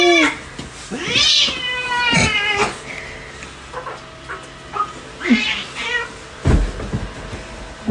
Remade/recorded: recorded